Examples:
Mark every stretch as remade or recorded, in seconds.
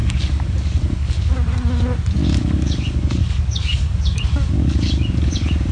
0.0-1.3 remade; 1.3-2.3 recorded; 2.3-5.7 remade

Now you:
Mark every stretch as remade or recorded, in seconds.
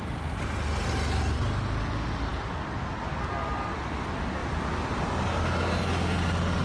0.0-6.6 recorded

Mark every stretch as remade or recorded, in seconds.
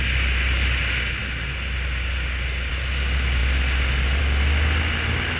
0.0-5.4 recorded